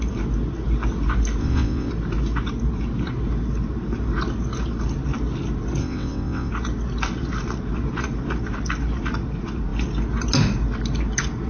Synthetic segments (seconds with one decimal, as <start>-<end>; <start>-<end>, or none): 1.4-1.9; 5.8-6.5